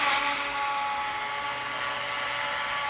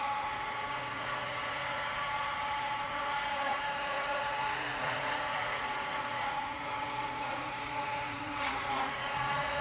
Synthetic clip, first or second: second